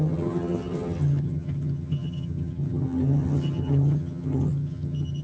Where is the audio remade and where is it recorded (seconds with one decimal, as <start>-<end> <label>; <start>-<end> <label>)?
0.0-5.2 remade